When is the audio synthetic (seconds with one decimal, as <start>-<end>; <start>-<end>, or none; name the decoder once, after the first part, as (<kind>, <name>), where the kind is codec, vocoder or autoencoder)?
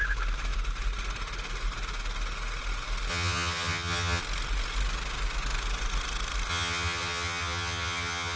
3.1-4.2 (vocoder, HiFi-GAN); 6.5-8.4